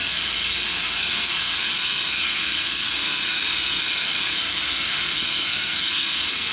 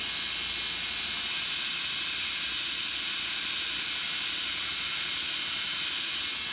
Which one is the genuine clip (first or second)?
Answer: second